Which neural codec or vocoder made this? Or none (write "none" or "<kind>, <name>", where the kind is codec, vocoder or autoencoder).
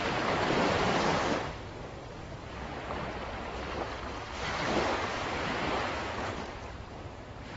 vocoder, BigVGAN v2